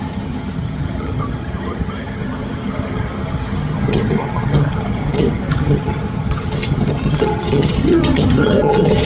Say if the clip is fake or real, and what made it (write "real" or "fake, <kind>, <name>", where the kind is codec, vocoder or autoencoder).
fake, vocoder, HiFi-GAN